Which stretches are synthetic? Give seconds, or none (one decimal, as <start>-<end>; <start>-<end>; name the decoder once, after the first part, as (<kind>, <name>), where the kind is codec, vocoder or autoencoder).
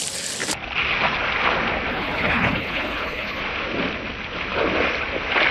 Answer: 1.9-3.4 (codec, HILCodec)